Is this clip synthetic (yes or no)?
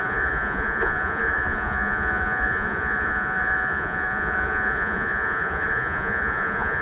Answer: yes